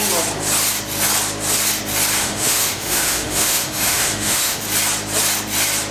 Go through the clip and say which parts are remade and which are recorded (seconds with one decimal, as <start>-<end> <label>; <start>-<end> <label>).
0.0-2.2 recorded; 2.2-4.6 remade; 4.6-5.9 recorded